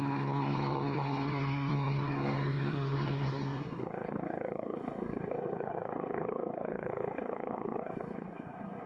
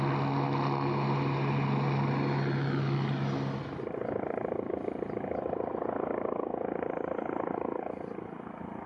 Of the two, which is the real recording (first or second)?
second